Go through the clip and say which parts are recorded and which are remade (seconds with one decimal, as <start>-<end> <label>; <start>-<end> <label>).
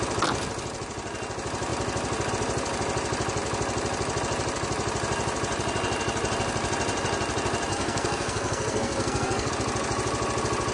0.0-7.7 recorded; 7.7-9.5 remade; 9.5-10.7 recorded